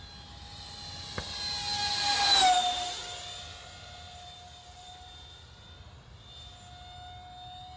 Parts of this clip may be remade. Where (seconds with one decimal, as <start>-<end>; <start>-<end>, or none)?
none